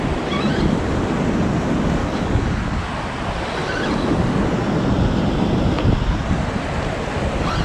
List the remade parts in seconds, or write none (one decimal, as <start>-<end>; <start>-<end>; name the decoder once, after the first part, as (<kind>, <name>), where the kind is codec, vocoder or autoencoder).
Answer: 2.0-2.8 (codec, DAC)